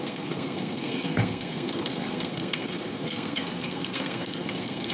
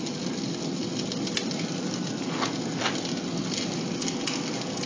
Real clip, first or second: second